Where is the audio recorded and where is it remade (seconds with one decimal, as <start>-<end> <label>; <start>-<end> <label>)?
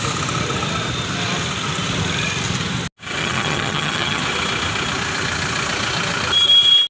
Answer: 0.0-3.2 recorded; 3.2-4.2 remade; 4.2-6.9 recorded